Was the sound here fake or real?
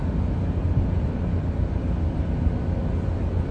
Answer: real